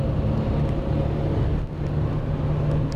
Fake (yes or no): no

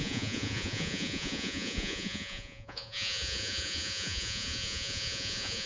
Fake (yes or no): yes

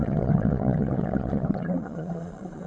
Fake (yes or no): yes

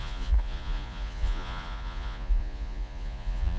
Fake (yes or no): yes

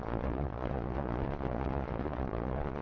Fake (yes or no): yes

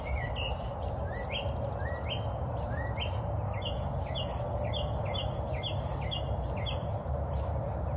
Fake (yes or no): no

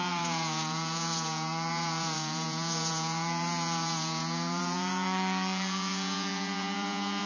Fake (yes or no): yes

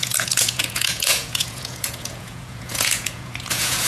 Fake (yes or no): yes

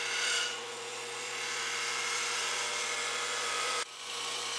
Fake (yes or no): yes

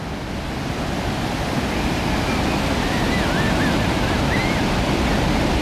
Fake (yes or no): no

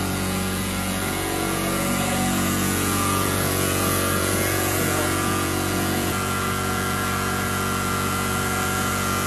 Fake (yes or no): yes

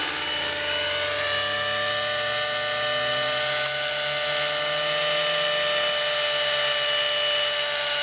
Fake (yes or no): no